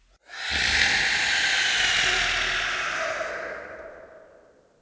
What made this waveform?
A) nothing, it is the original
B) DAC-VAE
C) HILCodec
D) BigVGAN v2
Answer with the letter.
A